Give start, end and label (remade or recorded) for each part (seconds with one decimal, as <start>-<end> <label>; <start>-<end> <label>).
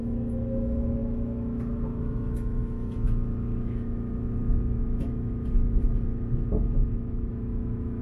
0.0-8.0 remade